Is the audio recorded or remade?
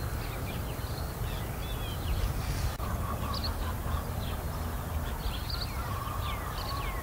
recorded